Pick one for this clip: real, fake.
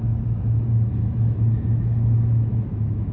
fake